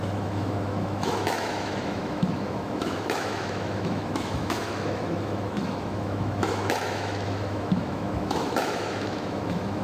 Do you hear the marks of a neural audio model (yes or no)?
yes